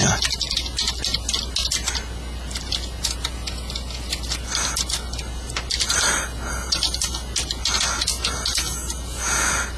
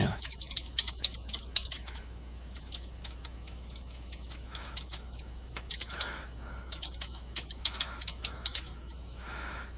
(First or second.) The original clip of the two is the first